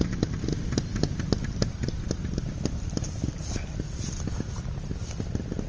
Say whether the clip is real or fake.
real